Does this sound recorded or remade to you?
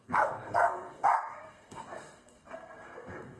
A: remade